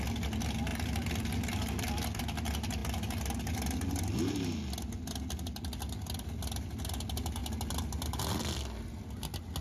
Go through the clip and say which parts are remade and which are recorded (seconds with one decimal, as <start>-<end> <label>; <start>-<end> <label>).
0.0-0.7 recorded; 0.7-2.2 remade; 2.2-9.6 recorded